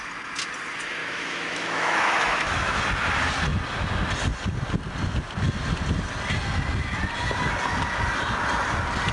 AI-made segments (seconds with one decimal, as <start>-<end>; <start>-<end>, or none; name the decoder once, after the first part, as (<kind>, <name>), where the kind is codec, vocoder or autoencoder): 1.0-2.8 (autoencoder, DAC-VAE)